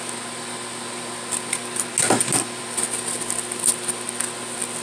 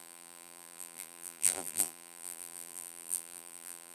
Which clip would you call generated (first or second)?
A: second